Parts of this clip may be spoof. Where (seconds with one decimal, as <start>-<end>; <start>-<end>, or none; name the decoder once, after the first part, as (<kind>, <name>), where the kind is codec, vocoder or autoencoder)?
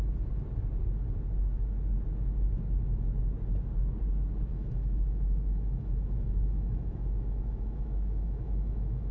4.5-9.1 (autoencoder, DAC-VAE)